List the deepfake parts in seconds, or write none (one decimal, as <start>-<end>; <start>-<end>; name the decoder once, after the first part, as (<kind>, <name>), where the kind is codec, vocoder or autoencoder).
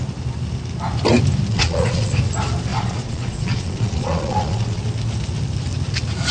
1.5-2.1 (vocoder, Vocos); 2.7-4.8